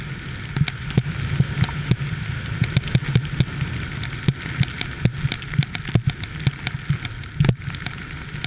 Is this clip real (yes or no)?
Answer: yes